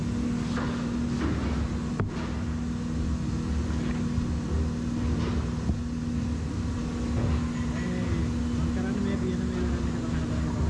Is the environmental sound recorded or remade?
recorded